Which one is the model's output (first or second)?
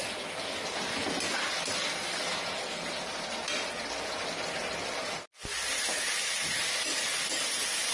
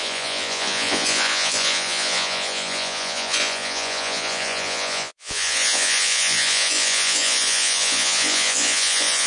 second